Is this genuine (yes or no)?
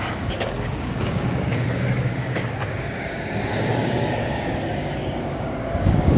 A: no